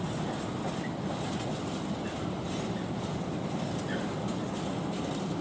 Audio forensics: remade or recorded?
recorded